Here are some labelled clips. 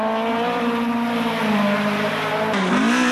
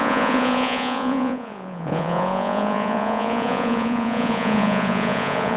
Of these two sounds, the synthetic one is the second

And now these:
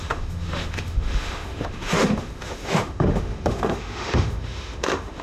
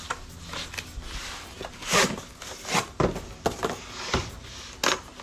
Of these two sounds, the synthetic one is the first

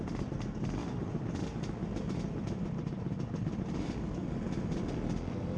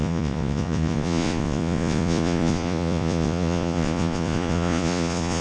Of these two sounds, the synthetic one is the second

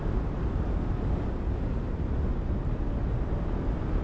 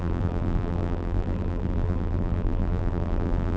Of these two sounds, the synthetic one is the second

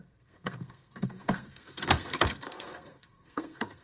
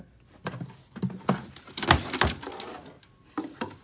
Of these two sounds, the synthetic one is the first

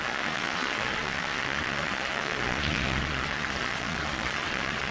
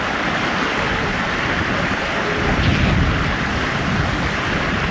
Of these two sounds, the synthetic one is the first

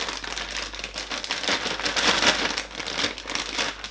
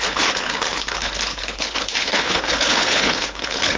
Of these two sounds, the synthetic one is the second